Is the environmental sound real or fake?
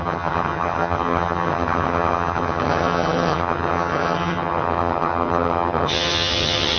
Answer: fake